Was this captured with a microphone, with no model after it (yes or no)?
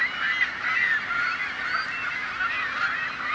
yes